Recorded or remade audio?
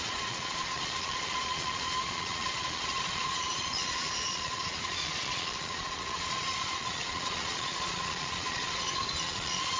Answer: remade